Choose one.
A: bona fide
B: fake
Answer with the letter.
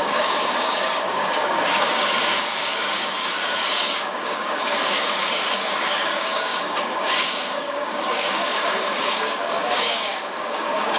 B